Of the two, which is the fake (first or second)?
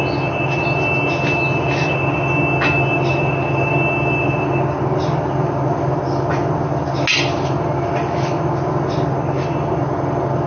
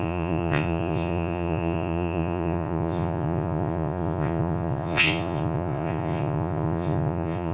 second